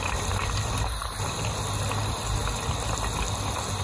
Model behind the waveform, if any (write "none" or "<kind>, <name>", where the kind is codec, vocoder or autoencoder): none